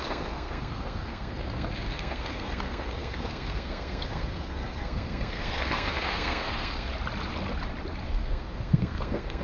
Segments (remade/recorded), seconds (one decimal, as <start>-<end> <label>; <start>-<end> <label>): 0.0-6.9 remade; 6.9-8.1 recorded; 8.1-9.4 remade